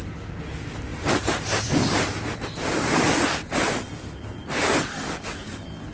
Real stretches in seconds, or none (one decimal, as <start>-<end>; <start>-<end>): 0.0-0.9; 4.4-5.9